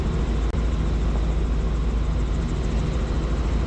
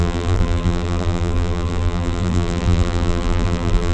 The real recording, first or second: first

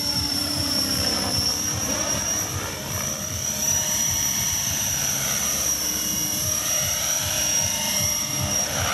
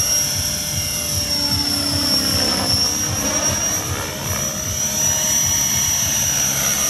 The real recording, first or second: second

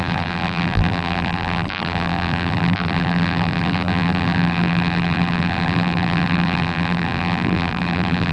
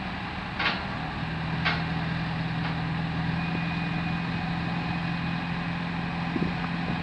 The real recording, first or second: second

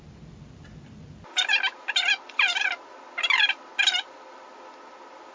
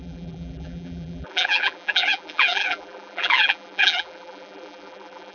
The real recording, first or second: first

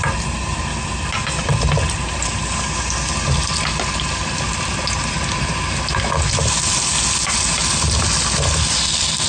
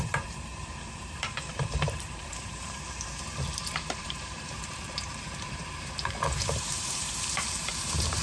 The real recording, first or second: first